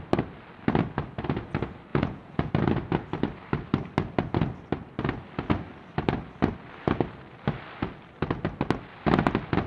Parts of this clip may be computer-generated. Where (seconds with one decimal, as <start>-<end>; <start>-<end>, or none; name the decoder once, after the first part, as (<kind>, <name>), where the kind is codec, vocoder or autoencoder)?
1.9-2.5 (vocoder, Vocos)